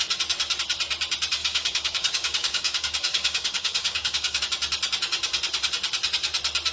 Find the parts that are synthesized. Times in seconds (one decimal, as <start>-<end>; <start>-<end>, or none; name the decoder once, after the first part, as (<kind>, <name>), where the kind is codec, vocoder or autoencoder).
1.4-4.4 (codec, DAC)